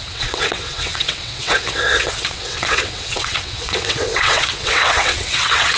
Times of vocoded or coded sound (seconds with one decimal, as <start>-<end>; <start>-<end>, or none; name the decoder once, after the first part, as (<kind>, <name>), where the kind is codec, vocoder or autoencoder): 0.0-5.8 (vocoder, WaveNeXt)